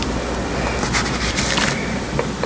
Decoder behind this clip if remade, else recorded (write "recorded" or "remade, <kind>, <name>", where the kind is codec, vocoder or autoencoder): recorded